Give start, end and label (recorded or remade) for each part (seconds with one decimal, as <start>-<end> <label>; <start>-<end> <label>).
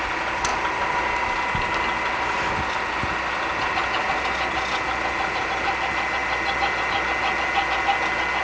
0.0-8.4 recorded